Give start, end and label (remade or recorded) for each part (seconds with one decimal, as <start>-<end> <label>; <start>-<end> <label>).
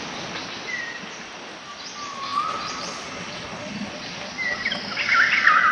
0.0-5.7 recorded